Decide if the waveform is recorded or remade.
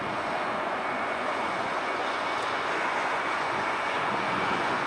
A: remade